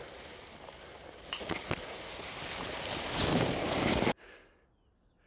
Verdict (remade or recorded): recorded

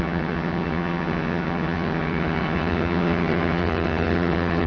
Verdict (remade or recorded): remade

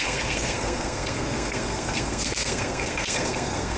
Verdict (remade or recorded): remade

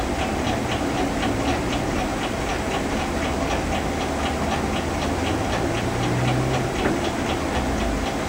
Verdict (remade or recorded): recorded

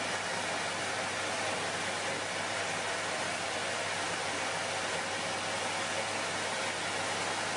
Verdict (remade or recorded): recorded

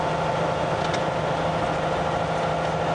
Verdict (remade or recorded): recorded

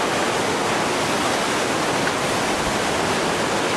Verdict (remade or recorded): recorded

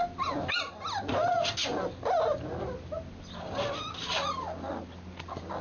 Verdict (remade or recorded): recorded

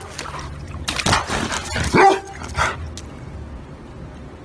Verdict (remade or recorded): recorded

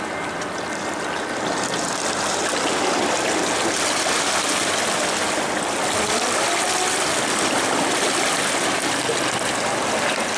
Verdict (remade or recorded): recorded